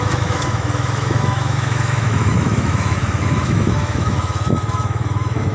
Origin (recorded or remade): remade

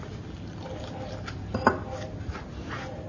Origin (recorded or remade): recorded